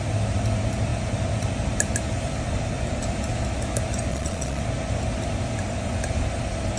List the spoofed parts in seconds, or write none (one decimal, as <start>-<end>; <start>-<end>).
4.1-4.6